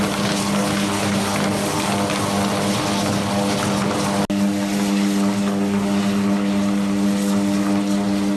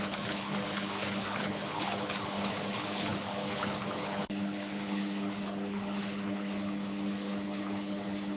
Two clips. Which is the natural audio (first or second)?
first